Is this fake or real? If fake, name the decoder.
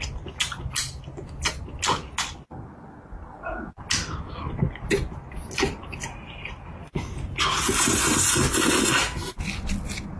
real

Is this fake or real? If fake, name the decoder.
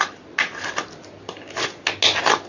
real